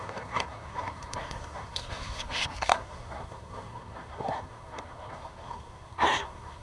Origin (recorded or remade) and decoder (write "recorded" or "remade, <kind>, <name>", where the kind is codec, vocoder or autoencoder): remade, codec, SNAC